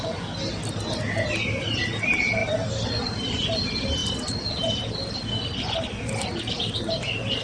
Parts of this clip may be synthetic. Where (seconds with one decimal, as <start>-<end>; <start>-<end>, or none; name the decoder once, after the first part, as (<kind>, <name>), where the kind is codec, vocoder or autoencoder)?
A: none